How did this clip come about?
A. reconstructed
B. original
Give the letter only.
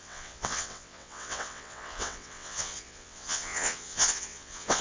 A